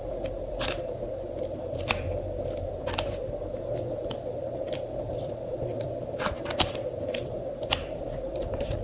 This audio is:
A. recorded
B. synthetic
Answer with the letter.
B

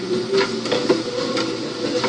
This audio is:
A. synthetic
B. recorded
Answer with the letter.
B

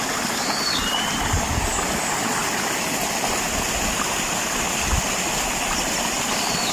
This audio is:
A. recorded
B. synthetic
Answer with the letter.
A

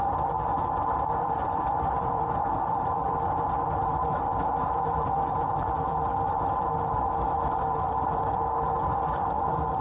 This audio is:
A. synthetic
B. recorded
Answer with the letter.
A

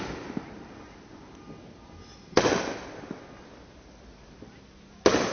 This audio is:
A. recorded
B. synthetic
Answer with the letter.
A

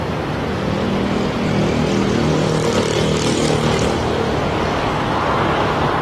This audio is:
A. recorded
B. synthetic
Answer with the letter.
A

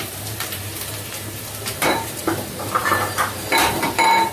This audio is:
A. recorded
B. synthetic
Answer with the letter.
B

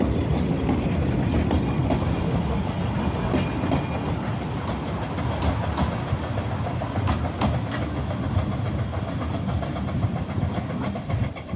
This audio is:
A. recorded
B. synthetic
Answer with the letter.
A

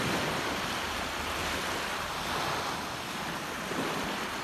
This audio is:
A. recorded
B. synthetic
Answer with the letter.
A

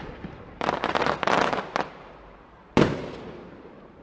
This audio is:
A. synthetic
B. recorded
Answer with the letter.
A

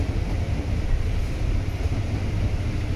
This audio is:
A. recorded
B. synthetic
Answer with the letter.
A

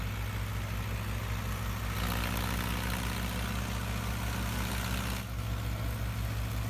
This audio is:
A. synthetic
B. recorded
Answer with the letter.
B